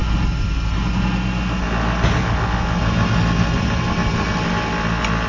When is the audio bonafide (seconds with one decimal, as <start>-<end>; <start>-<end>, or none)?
0.0-5.3